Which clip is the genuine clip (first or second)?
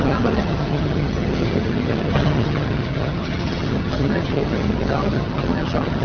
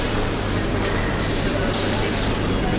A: second